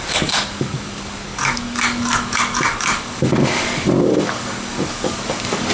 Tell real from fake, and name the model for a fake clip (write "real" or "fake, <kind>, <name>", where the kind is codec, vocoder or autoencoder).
fake, codec, DAC